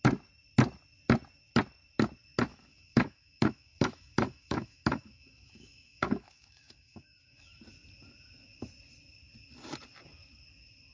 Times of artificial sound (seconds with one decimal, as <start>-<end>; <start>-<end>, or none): 2.5-7.6